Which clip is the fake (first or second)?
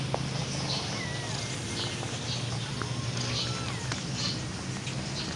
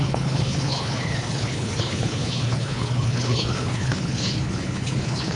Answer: second